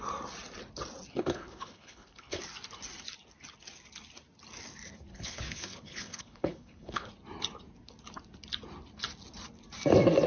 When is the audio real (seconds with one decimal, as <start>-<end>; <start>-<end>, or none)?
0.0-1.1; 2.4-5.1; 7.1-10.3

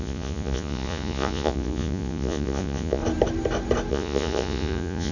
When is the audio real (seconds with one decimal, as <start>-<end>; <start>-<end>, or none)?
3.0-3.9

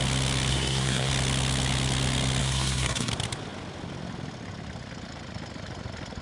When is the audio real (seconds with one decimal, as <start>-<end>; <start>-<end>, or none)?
0.0-0.5; 1.1-2.4; 3.1-6.2

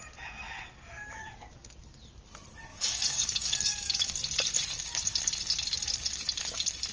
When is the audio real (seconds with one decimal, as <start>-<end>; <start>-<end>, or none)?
0.0-2.7; 4.1-6.9